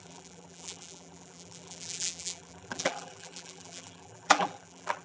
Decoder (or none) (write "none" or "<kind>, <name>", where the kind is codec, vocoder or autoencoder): vocoder, BigVGAN v2